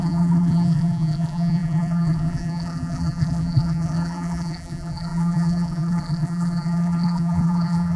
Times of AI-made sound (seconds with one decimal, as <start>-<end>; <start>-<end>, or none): 0.0-8.0